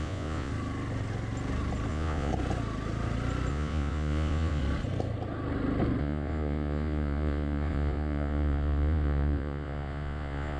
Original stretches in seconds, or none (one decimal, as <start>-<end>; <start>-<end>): 0.5-1.9; 2.3-3.5; 4.6-6.0